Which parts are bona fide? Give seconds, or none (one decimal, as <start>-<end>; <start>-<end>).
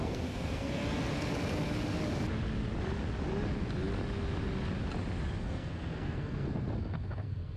0.8-5.4